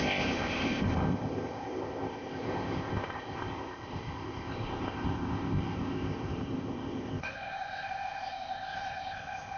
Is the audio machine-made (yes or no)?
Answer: yes